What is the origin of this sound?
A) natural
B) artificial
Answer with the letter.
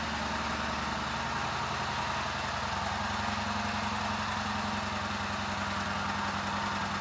A